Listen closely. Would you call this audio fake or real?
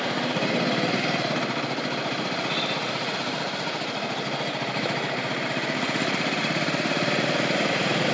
real